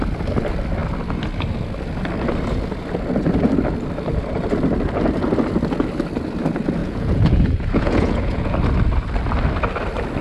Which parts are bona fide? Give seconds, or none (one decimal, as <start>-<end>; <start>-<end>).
0.0-6.8; 8.5-10.2